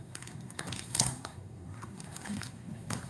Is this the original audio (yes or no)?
no